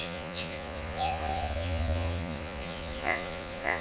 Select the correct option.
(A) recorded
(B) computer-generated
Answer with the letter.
B